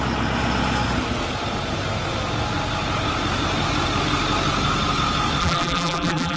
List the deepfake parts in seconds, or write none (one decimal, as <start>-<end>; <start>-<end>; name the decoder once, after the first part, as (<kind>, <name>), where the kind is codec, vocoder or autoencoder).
5.4-6.4 (vocoder, BigVGAN v2)